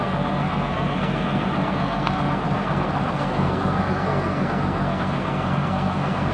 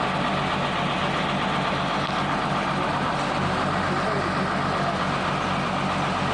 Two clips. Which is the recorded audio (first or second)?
second